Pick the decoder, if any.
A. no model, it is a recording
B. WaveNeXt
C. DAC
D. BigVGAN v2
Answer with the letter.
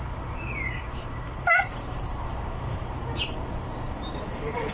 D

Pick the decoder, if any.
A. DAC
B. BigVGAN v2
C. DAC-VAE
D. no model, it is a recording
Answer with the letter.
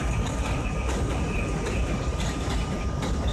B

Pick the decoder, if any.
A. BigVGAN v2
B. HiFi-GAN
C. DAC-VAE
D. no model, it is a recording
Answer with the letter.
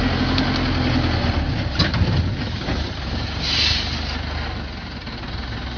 D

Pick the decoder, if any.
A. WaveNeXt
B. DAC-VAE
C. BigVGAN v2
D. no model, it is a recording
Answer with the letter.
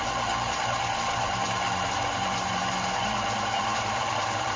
C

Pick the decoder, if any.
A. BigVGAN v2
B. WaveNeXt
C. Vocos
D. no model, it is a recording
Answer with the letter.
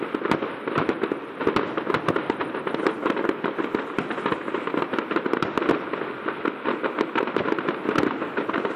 D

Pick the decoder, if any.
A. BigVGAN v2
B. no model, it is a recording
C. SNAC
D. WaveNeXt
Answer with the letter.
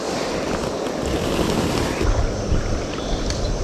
B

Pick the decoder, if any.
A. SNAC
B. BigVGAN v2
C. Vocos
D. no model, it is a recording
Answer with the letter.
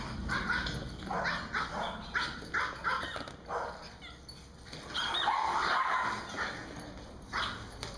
D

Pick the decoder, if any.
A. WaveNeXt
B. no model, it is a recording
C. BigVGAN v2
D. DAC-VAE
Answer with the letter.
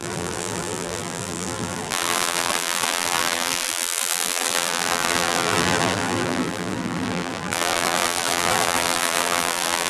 C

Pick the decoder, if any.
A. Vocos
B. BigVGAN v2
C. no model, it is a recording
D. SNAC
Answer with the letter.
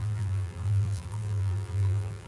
B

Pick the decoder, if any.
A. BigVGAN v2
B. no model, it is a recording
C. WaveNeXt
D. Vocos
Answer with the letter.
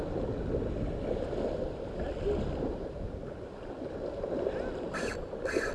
B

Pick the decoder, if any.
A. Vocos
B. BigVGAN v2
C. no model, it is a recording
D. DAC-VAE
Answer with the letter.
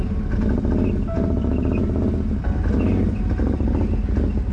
C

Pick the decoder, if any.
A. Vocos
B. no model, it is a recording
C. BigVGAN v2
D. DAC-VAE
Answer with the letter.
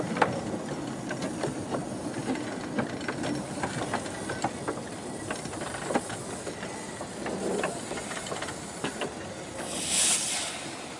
B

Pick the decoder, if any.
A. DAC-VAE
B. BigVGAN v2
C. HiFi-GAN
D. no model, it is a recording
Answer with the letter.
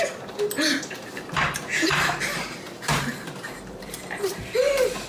B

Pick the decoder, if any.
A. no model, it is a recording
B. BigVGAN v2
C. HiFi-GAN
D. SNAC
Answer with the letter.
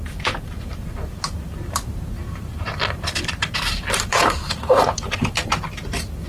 B